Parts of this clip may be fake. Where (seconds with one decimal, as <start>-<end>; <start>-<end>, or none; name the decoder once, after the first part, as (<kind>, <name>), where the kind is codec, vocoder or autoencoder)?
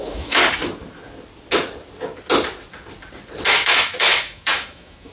0.0-0.4 (autoencoder, DAC-VAE); 3.5-5.1